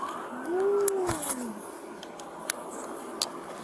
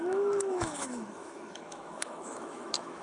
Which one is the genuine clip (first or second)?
first